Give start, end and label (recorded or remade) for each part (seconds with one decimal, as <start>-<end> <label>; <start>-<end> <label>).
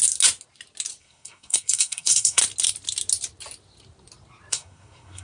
0.0-1.0 recorded; 1.0-2.4 remade; 2.4-4.5 recorded; 4.5-5.2 remade